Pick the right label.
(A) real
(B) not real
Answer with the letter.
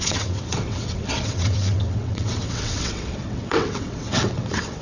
B